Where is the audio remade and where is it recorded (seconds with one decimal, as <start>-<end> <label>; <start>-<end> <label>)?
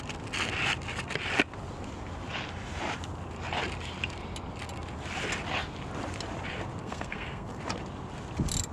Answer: 0.0-6.8 recorded; 6.8-7.6 remade; 7.6-8.7 recorded